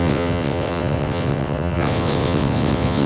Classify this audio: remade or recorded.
remade